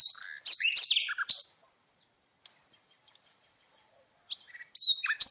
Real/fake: real